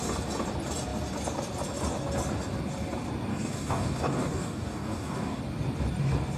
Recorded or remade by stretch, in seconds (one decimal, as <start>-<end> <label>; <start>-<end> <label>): 0.0-3.3 recorded; 3.3-5.4 remade; 5.4-6.4 recorded